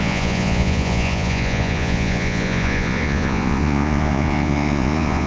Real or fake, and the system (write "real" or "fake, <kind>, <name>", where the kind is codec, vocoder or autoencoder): fake, vocoder, Vocos